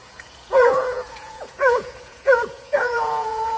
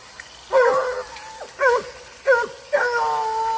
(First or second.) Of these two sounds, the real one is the second